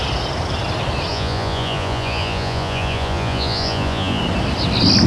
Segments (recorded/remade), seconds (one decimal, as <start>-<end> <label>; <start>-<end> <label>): 0.0-1.1 recorded; 1.1-4.2 remade; 4.2-5.1 recorded